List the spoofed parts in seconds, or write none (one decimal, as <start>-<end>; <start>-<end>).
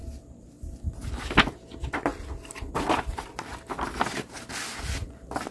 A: 1.5-2.1; 3.0-3.5